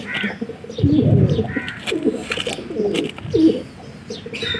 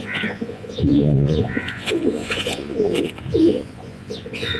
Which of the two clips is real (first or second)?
first